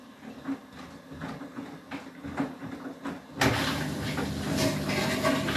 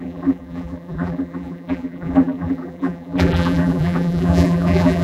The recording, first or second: first